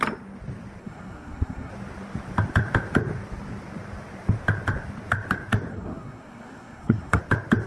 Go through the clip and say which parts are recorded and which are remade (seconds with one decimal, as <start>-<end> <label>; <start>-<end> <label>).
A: 0.0-0.8 recorded; 0.8-1.7 remade; 1.7-5.7 recorded; 5.7-7.2 remade; 7.2-7.7 recorded